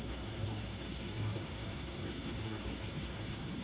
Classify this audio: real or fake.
fake